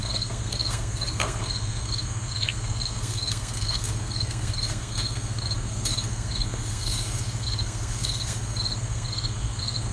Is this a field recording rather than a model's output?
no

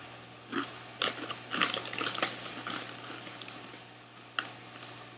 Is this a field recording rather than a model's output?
yes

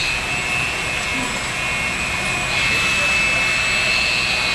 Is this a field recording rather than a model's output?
yes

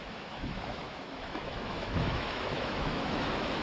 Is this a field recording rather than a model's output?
no